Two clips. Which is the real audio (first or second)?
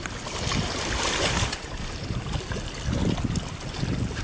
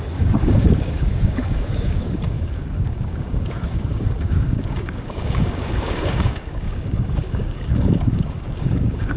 first